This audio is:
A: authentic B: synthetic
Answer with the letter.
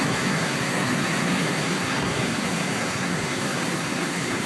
B